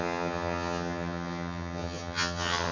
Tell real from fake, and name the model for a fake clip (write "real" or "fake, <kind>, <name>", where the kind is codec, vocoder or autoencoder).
fake, vocoder, HiFi-GAN